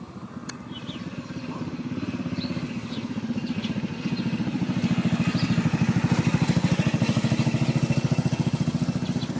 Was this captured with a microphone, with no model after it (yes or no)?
yes